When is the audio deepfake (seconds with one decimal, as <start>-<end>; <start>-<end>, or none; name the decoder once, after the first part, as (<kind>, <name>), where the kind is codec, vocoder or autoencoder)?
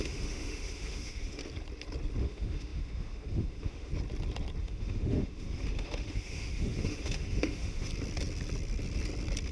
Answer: 0.0-1.4 (autoencoder, DAC-VAE); 2.2-3.9; 4.6-7.9